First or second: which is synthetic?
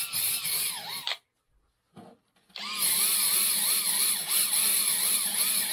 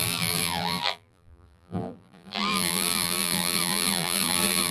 second